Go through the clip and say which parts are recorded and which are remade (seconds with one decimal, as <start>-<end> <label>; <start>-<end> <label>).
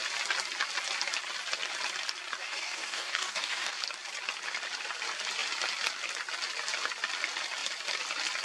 0.0-2.4 recorded; 2.4-3.8 remade; 3.8-8.4 recorded